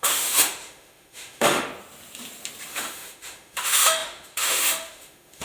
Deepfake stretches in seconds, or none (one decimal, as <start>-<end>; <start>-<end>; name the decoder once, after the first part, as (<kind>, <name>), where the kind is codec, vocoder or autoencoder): 0.0-1.7 (autoencoder, DAC-VAE); 2.7-5.4